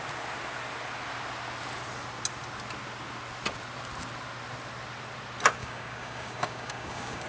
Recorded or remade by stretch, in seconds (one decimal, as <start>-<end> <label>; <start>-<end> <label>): 0.0-5.6 recorded; 5.6-7.3 remade